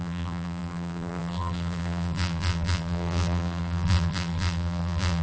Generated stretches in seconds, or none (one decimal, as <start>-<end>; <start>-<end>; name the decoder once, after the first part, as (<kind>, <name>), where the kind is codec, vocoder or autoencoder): 0.0-5.2 (vocoder, BigVGAN v2)